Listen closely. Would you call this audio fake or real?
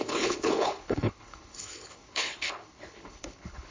fake